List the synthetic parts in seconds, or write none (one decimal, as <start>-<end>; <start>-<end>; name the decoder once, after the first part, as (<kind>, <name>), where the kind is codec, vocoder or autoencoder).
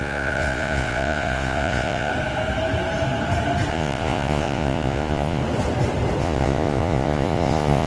0.0-2.1 (vocoder, Vocos); 3.7-5.4; 6.2-7.9